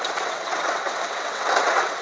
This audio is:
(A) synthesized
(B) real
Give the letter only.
A